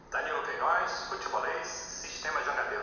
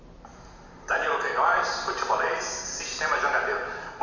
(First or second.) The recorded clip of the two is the first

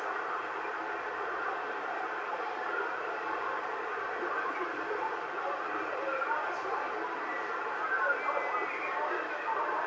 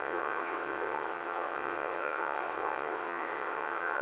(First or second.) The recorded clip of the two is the first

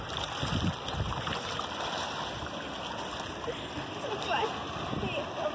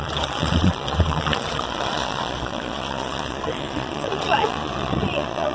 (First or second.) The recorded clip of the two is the first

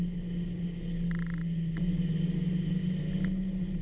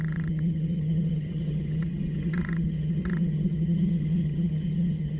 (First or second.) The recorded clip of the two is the first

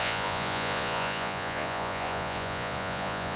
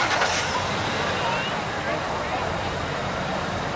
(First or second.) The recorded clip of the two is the second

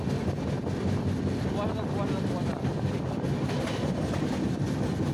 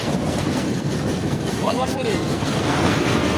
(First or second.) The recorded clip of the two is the first